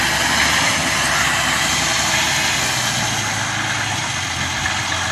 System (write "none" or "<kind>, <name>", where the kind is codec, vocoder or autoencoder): none